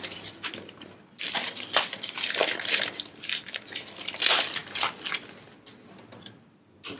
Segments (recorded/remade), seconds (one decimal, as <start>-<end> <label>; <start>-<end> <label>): 0.0-4.6 remade; 4.6-6.2 recorded; 6.2-7.0 remade